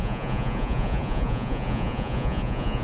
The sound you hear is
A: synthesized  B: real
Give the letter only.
A